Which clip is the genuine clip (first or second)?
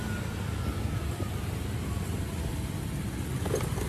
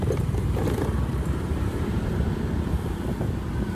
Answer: first